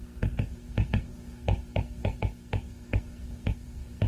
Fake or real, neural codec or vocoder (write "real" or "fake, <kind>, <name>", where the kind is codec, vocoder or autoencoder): fake, codec, SNAC